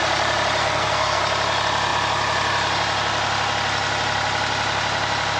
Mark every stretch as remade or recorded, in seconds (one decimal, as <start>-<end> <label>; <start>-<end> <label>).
0.0-0.6 recorded; 0.6-1.2 remade; 1.2-5.4 recorded

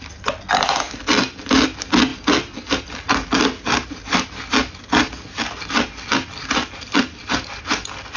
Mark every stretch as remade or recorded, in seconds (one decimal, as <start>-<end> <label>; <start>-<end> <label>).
0.0-8.2 recorded

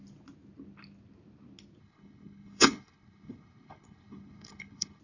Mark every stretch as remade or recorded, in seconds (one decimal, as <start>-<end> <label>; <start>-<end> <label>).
0.0-1.8 recorded; 1.8-5.0 remade

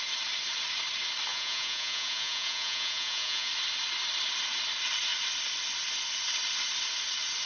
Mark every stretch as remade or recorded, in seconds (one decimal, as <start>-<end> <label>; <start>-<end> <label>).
0.0-1.3 recorded; 1.3-3.5 remade; 3.5-7.5 recorded

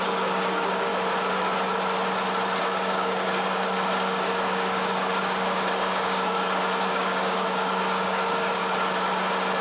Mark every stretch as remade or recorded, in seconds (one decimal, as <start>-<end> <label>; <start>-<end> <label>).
0.0-0.9 remade; 0.9-2.6 recorded; 2.6-8.6 remade; 8.6-9.6 recorded

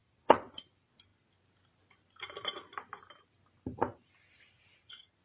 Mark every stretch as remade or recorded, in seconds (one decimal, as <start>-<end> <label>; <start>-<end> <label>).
0.0-0.6 remade; 0.6-5.2 recorded